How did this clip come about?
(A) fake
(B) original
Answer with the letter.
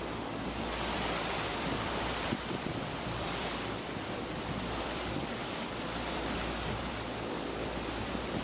A